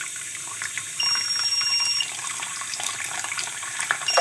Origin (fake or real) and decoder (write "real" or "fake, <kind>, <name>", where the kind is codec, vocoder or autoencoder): fake, vocoder, BigVGAN v2